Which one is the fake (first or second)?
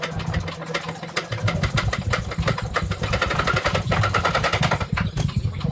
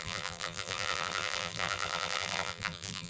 second